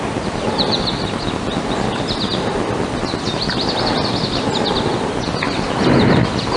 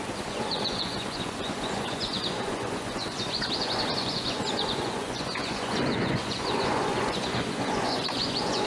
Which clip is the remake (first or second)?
second